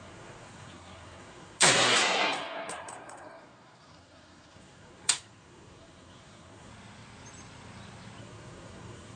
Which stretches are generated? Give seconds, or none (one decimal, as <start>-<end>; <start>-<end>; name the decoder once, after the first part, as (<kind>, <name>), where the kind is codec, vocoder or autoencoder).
0.0-6.7 (codec, SNAC); 8.2-9.2